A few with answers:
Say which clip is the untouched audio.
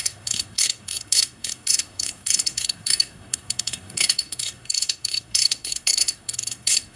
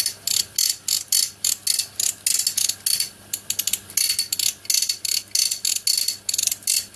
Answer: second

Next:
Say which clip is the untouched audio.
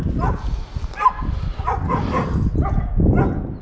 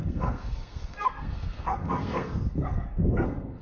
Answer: first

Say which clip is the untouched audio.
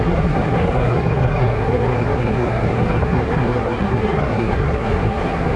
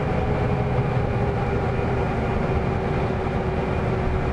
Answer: second